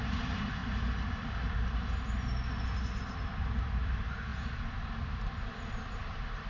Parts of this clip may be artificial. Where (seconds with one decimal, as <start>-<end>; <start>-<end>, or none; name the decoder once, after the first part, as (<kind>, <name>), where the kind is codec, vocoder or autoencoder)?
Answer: 0.0-0.6 (vocoder, BigVGAN v2); 3.6-4.3; 5.9-6.5